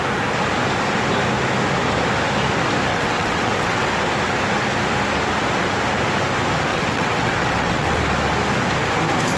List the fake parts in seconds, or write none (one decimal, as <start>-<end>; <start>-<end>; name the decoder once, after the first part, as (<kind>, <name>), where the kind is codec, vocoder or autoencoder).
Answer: 2.9-3.9 (vocoder, WaveNeXt); 6.7-8.0